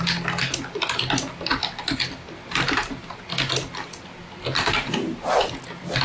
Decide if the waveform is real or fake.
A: real